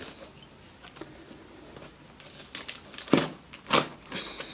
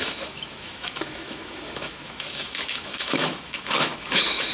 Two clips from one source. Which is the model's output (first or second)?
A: second